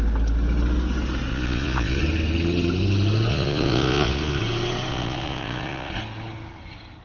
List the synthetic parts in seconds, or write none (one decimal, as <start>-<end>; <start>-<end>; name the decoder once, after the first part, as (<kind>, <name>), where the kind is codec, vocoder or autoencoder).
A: 1.3-2.0 (vocoder, Vocos); 3.3-4.4; 4.9-5.9